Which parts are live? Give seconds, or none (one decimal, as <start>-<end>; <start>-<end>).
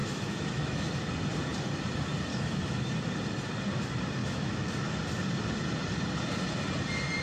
1.0-2.3; 2.9-4.2; 5.0-7.2